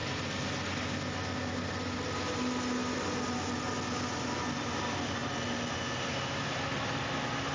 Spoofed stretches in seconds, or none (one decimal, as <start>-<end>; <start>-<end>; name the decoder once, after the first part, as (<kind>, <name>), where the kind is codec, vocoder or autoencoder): none